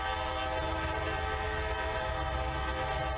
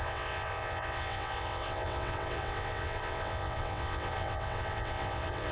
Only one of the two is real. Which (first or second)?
first